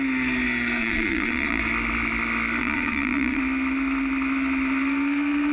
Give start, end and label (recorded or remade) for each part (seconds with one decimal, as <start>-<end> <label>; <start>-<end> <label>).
0.0-0.8 recorded; 0.8-1.6 remade; 1.6-2.6 recorded; 2.6-3.4 remade; 3.4-5.5 recorded